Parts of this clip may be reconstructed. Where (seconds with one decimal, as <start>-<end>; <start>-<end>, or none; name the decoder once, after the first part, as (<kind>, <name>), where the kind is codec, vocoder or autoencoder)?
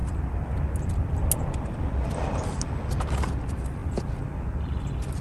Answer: none